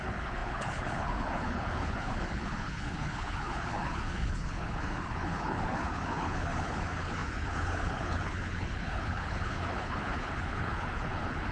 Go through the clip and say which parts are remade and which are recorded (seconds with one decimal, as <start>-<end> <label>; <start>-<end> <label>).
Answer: 0.0-11.5 remade